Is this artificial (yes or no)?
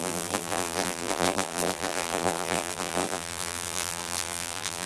yes